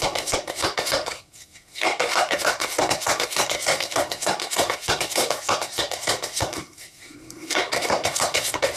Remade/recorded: remade